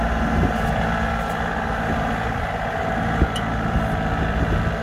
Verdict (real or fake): real